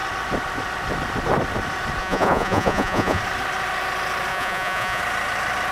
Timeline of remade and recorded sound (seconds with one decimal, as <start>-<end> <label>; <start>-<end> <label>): 0.0-2.0 recorded; 2.0-3.2 remade; 3.2-4.3 recorded; 4.3-5.0 remade; 5.0-5.7 recorded